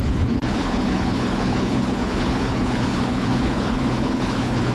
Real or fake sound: fake